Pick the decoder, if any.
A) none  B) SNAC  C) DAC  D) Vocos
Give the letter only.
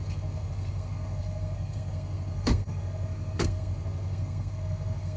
B